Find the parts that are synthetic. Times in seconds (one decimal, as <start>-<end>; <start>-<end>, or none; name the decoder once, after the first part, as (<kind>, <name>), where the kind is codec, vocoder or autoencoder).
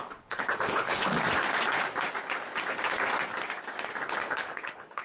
0.0-1.1 (codec, HILCodec); 4.1-5.0